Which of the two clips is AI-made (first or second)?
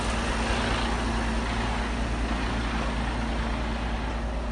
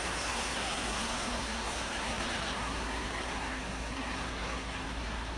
second